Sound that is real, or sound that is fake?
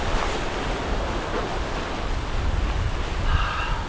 real